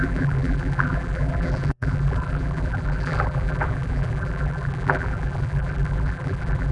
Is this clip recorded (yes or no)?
no